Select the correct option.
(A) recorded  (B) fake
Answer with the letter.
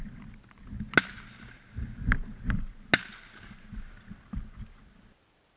A